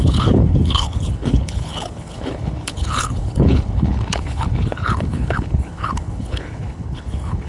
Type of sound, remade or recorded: remade